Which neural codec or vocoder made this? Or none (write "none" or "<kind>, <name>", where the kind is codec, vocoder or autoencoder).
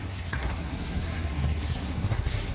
codec, SNAC